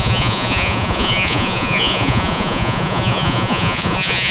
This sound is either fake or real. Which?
fake